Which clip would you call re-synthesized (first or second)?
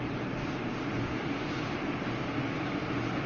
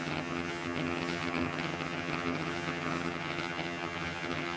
second